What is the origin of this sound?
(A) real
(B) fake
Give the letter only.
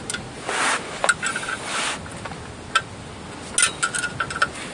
A